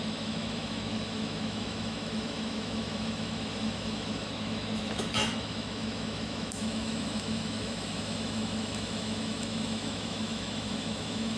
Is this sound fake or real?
fake